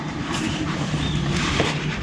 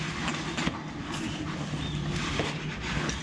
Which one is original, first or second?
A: second